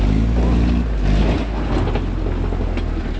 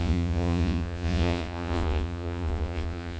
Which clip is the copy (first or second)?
second